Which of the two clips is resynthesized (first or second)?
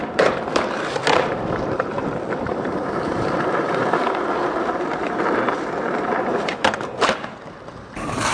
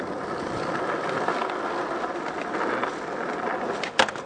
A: first